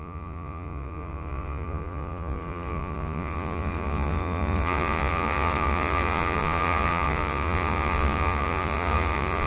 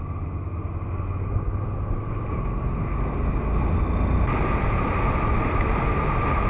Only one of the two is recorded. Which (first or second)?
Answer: second